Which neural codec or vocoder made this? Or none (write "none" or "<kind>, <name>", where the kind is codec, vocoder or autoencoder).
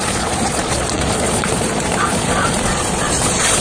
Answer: vocoder, Vocos